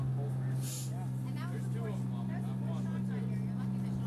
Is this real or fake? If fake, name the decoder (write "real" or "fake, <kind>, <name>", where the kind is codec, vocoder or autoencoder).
real